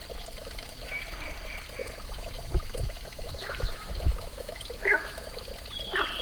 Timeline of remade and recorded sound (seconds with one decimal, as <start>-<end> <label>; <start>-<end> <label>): 0.0-0.4 recorded; 0.4-1.0 remade; 1.0-1.8 recorded; 1.8-5.5 remade; 5.5-6.2 recorded